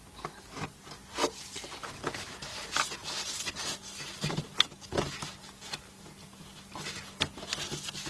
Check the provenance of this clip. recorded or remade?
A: recorded